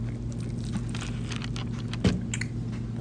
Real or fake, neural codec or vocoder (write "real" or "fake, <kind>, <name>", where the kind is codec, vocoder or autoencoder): real